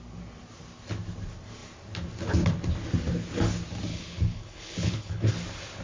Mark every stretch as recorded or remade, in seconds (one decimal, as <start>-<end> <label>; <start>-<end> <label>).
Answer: 0.0-3.9 recorded; 3.9-5.3 remade; 5.3-5.8 recorded